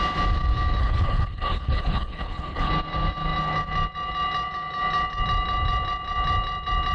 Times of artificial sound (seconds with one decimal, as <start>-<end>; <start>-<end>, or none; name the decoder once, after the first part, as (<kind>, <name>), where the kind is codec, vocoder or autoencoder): 0.8-2.7 (codec, HILCodec)